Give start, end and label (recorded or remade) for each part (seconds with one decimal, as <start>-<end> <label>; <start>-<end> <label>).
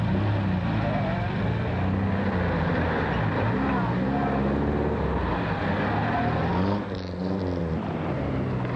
0.0-8.8 recorded